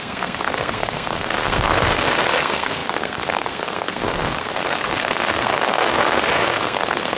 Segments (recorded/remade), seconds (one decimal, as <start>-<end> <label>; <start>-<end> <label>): 0.0-7.2 remade